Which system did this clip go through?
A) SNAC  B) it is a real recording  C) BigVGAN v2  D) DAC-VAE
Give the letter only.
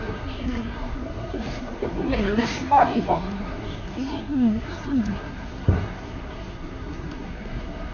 A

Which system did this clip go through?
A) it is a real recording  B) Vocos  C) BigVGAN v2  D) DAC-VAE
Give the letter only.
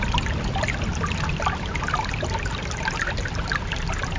A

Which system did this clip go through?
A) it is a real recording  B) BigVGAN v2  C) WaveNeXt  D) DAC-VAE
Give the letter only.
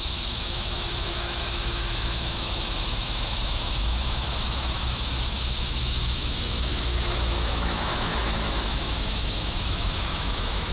D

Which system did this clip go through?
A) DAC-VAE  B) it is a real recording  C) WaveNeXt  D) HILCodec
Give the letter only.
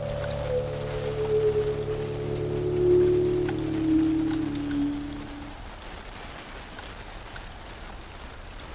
B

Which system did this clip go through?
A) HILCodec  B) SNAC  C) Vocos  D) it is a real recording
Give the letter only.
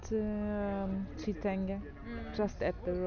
D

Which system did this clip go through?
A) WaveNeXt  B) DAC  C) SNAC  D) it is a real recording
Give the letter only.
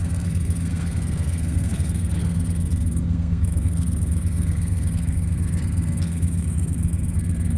C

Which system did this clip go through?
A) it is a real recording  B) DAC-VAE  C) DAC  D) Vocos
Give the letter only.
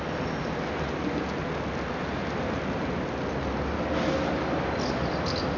A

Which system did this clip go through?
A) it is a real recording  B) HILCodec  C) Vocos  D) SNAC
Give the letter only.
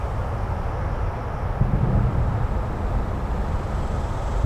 A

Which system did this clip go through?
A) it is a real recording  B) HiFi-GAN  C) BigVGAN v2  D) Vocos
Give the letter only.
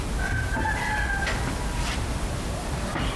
A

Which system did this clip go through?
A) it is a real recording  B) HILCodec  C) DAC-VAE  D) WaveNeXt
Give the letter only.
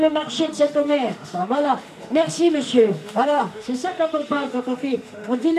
C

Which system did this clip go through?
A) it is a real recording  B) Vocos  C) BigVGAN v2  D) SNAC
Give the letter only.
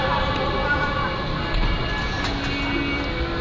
A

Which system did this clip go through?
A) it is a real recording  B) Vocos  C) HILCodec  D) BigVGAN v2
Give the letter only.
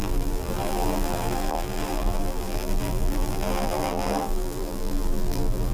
D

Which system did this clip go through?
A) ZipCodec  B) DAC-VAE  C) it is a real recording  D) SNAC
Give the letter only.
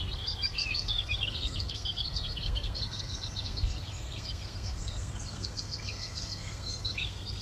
D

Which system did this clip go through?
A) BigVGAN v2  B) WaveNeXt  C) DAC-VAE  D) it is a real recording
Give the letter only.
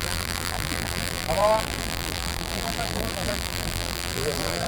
A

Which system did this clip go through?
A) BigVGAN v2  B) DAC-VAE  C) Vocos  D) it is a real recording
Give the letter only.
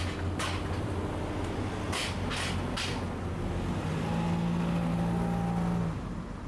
D